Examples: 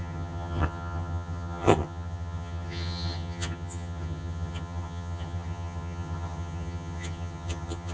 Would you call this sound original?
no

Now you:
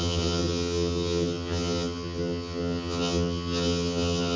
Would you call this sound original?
no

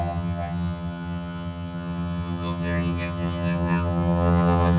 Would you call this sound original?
no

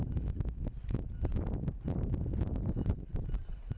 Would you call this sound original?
yes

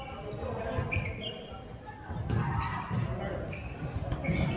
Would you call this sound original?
yes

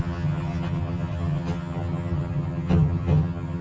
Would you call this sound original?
no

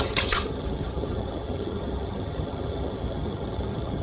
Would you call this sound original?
no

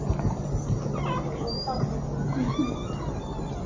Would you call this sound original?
yes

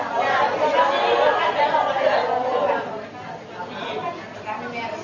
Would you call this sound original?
yes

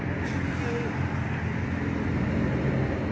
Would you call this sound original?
yes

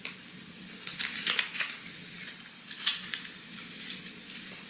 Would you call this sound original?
yes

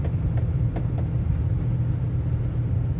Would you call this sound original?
yes